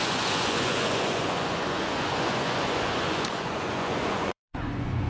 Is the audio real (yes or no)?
no